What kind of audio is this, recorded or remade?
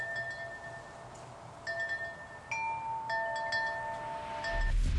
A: recorded